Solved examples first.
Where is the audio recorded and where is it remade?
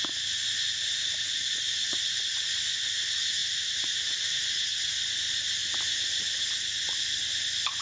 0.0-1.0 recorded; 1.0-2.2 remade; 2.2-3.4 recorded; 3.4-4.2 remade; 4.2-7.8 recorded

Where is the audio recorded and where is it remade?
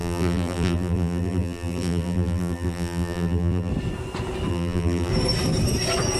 0.0-3.7 remade; 3.7-4.5 recorded; 4.5-5.1 remade; 5.1-6.2 recorded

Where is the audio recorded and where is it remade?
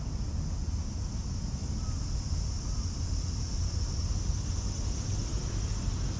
0.0-6.2 recorded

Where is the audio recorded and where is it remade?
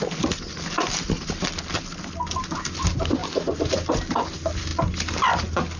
0.0-3.2 recorded; 3.2-4.0 remade; 4.0-5.8 recorded